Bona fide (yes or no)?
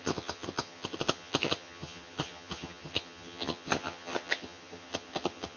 no